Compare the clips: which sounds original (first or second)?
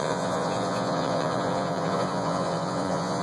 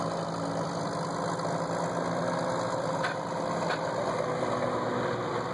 second